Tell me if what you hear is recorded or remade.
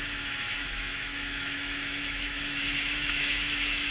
remade